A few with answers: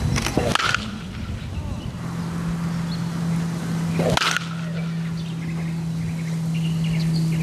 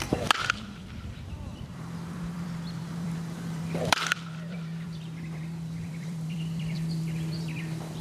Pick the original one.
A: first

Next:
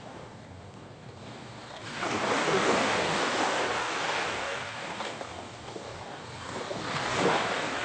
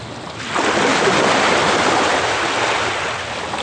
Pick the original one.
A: second